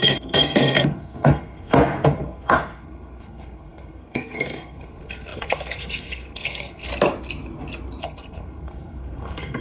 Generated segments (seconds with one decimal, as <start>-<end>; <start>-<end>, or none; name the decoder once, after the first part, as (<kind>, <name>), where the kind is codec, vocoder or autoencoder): 0.0-6.9 (codec, SNAC); 8.0-9.6